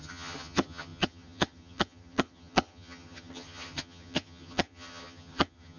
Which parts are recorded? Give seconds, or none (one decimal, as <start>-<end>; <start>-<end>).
none